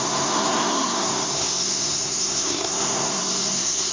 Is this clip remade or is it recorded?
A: remade